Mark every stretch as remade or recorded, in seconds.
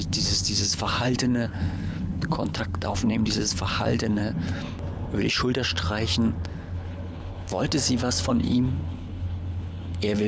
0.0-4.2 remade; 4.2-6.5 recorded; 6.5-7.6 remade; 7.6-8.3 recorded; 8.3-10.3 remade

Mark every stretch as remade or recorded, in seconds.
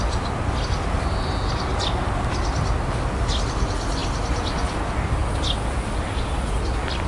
0.0-7.1 recorded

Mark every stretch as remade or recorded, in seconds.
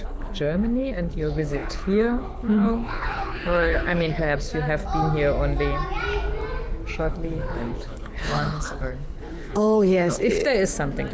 0.0-4.5 remade; 4.5-6.9 recorded; 6.9-10.4 remade; 10.4-11.1 recorded